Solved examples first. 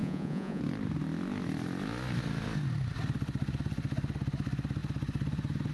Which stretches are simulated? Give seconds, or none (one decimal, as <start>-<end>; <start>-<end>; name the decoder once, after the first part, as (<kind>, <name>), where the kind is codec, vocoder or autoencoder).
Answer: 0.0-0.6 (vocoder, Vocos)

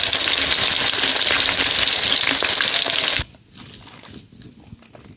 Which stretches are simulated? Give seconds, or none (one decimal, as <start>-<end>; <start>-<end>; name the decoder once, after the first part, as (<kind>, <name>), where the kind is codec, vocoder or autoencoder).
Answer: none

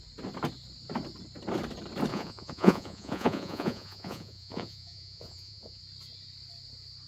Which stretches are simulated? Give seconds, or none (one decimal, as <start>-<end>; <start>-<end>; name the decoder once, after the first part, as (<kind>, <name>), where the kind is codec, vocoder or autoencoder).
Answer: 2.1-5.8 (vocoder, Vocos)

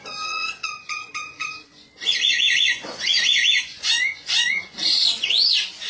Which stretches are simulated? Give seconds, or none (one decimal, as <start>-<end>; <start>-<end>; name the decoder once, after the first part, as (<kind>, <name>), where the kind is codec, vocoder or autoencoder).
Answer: 0.0-5.9 (vocoder, Vocos)

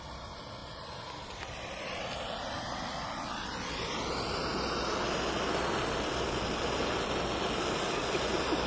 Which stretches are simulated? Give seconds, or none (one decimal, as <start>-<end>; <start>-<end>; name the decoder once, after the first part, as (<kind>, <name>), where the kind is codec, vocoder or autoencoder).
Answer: none

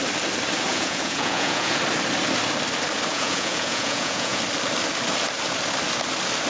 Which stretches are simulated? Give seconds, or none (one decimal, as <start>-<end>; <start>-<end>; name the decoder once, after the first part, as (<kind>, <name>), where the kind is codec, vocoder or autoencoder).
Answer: 0.7-1.8 (vocoder, Vocos); 3.1-4.4

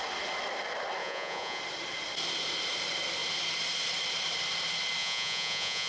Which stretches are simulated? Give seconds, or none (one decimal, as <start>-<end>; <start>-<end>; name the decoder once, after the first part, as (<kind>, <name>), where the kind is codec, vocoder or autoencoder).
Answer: 1.0-1.6 (vocoder, Vocos); 5.0-5.9

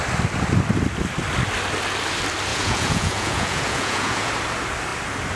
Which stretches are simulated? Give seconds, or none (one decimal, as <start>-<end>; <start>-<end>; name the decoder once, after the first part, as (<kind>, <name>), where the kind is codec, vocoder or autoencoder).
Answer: 2.5-4.3 (vocoder, Vocos)